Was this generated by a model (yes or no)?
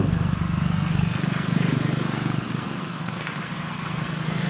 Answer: yes